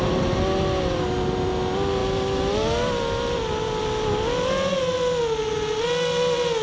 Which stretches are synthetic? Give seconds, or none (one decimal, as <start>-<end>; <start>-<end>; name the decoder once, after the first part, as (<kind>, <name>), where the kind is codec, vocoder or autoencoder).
none